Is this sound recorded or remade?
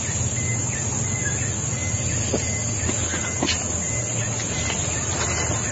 recorded